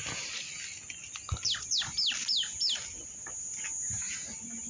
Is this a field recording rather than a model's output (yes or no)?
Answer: yes